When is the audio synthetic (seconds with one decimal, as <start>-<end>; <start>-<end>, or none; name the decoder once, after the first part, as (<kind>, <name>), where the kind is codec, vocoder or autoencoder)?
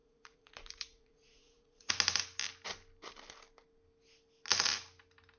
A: 0.0-1.9 (vocoder, Vocos)